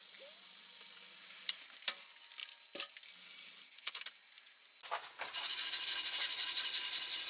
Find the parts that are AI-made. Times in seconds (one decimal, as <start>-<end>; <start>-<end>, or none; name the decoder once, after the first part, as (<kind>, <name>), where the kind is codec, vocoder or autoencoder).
none